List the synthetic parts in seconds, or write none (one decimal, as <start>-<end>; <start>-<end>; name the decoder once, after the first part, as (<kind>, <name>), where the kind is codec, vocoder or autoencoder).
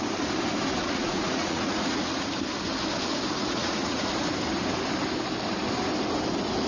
0.8-2.3 (vocoder, Vocos); 3.6-4.1